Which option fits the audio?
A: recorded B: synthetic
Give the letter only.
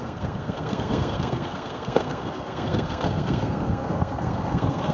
B